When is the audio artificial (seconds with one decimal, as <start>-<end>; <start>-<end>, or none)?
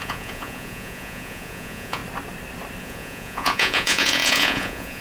0.0-2.0; 2.8-5.0